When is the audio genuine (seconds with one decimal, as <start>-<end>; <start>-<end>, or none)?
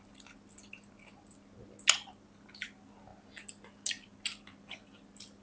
0.0-5.4